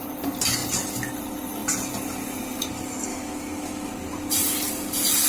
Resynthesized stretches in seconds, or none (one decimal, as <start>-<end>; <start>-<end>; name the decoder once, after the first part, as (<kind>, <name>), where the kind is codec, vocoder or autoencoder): 3.1-3.9 (autoencoder, DAC-VAE)